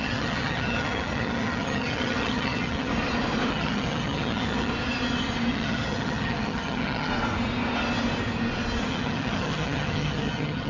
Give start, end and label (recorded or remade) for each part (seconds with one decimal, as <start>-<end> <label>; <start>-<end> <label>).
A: 0.0-2.9 remade; 2.9-3.5 recorded; 3.5-4.7 remade; 4.7-5.5 recorded; 5.5-7.1 remade; 7.1-8.8 recorded; 8.8-10.7 remade